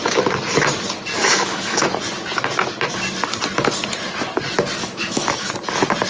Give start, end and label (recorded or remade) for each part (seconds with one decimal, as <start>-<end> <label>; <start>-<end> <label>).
0.0-1.2 recorded; 1.2-2.0 remade; 2.0-4.8 recorded; 4.8-5.5 remade; 5.5-6.1 recorded